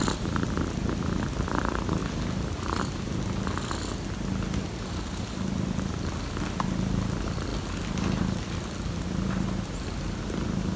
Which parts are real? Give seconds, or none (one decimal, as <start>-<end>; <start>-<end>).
0.0-10.8